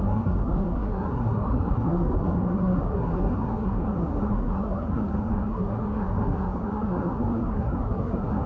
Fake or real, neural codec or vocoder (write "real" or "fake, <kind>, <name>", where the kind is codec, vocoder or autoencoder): fake, codec, SNAC